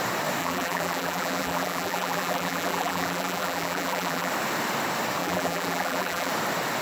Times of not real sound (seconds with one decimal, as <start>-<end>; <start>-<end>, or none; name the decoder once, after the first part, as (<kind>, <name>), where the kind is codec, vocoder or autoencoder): 0.4-4.3 (vocoder, BigVGAN v2); 5.2-6.3